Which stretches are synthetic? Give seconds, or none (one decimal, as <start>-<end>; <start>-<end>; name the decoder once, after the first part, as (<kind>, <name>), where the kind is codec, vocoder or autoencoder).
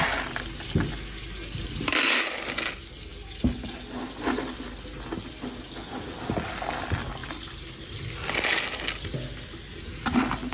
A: none